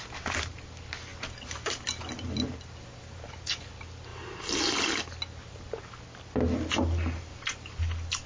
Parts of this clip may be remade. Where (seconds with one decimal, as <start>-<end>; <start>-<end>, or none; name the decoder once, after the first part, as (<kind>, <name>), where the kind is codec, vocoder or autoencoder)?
none

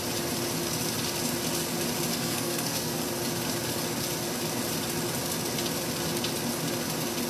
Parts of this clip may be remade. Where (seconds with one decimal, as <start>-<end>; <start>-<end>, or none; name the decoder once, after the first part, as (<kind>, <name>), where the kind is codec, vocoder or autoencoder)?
2.1-3.0 (codec, SNAC)

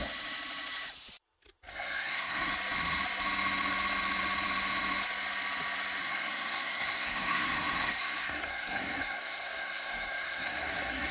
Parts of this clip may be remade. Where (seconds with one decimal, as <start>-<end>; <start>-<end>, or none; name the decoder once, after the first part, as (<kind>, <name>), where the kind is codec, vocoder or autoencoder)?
1.7-2.5 (codec, SNAC); 6.0-11.1

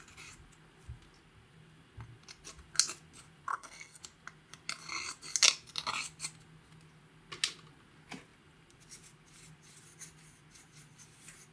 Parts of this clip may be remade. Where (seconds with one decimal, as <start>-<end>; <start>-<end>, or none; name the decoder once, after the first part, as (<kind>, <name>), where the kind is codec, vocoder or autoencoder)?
3.5-4.0 (codec, SNAC)

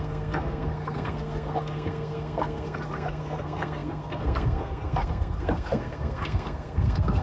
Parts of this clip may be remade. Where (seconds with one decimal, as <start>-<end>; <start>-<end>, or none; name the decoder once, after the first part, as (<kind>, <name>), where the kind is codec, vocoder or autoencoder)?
0.0-7.2 (codec, SNAC)

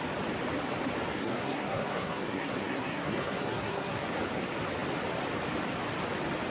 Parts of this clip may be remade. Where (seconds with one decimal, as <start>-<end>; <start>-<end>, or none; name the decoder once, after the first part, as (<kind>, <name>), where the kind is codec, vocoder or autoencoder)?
1.1-4.0 (codec, SNAC)

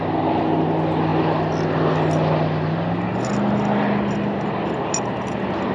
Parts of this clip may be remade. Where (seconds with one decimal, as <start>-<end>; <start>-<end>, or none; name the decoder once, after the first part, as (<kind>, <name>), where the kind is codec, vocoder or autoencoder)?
none

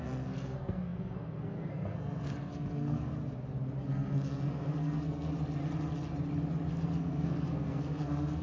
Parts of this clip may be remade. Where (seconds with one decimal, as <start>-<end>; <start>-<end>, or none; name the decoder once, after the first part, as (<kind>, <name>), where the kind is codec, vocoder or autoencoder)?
0.0-3.1 (codec, SNAC); 3.9-5.3; 6.7-8.4